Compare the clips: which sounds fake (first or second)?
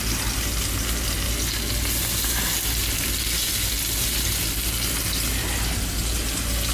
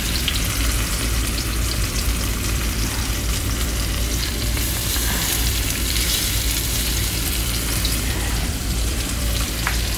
second